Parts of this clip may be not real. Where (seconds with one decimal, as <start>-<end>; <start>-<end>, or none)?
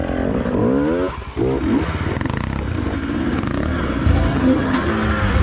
4.3-4.9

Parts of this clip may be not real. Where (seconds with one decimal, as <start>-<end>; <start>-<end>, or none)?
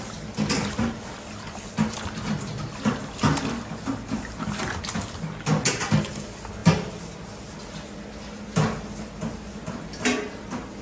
none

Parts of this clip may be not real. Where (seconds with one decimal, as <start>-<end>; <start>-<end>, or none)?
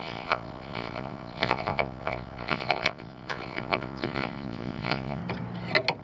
0.0-5.2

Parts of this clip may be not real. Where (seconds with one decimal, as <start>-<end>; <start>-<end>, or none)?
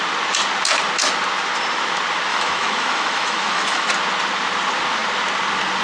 2.3-3.9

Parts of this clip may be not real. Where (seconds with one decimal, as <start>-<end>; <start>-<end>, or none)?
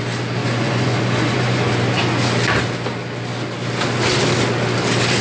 0.4-1.7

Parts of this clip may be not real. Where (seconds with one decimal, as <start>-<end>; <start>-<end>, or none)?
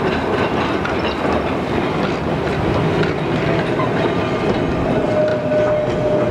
none